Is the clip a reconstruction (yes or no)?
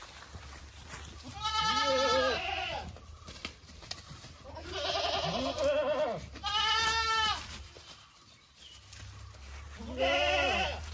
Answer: no